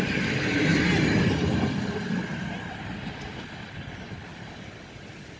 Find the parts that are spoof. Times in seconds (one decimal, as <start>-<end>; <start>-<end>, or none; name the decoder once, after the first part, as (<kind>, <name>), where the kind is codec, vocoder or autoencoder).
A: none

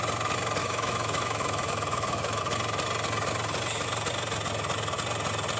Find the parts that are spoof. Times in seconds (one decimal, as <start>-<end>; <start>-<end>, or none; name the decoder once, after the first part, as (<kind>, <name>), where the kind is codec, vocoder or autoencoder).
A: 0.6-2.4 (autoencoder, DAC-VAE)

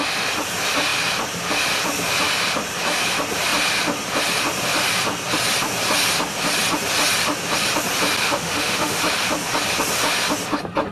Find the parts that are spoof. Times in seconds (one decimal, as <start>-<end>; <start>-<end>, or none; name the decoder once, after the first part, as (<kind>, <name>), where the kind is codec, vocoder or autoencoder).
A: 8.2-9.0 (autoencoder, DAC-VAE)

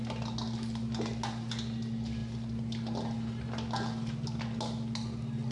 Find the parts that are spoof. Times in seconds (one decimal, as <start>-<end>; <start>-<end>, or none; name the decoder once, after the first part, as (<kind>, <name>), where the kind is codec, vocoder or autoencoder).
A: none